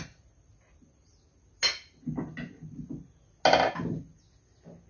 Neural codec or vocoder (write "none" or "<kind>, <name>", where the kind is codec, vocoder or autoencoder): none